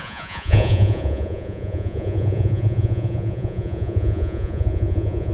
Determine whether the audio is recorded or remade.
remade